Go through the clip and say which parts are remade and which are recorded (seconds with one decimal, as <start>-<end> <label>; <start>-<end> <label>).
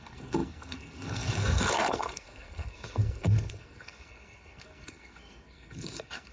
0.0-6.3 remade